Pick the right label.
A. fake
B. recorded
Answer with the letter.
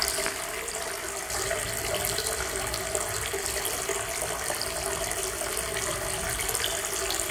B